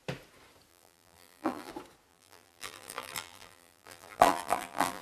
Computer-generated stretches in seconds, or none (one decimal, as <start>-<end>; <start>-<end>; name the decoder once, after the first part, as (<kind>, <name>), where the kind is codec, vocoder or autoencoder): 0.7-1.7 (vocoder, BigVGAN v2); 2.1-5.0